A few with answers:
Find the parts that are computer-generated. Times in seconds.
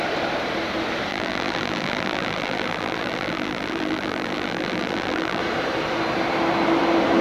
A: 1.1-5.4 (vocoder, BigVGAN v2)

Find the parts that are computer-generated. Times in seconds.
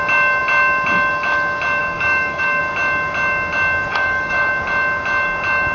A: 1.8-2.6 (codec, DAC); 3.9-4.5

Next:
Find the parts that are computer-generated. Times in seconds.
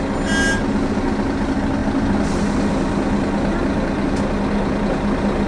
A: none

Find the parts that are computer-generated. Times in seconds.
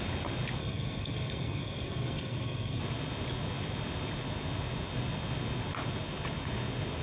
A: 0.6-2.8 (codec, SNAC)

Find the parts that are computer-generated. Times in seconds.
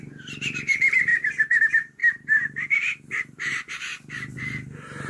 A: 0.0-3.9 (vocoder, BigVGAN v2); 4.4-5.1